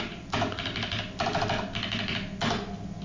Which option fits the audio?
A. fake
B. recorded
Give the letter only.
B